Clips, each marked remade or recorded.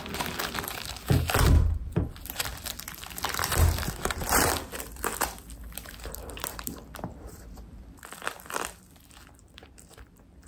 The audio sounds remade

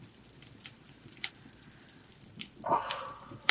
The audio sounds remade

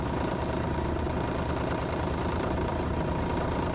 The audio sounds remade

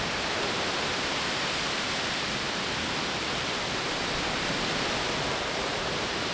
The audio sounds remade